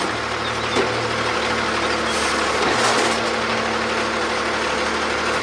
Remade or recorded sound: recorded